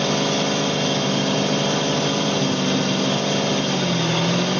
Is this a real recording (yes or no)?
yes